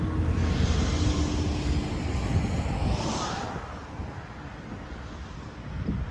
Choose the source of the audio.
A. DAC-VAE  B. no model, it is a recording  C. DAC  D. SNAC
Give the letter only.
B